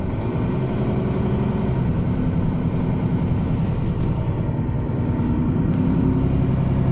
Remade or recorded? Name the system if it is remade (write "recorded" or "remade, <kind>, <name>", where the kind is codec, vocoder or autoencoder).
recorded